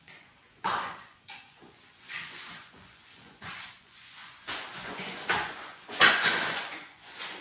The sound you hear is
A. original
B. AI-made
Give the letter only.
B